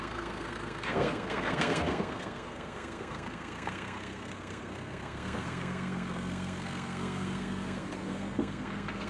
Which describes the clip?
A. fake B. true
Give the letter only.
A